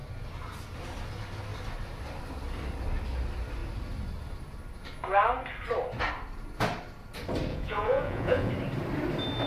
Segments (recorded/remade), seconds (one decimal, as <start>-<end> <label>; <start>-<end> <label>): 0.0-7.5 recorded; 7.5-8.5 remade; 8.5-9.5 recorded